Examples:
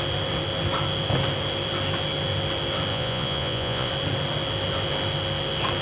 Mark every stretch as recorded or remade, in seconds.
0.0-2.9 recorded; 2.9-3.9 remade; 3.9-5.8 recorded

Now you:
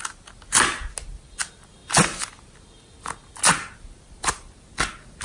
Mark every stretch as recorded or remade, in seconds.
0.0-5.2 recorded